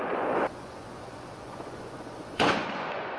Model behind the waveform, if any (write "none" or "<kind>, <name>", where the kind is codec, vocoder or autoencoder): vocoder, Vocos